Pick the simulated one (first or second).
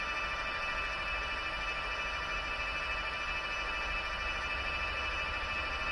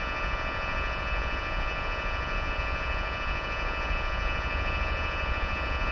second